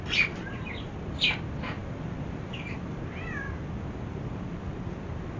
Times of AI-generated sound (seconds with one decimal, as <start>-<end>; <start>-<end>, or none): none